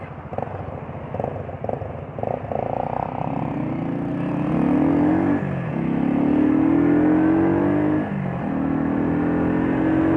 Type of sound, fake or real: real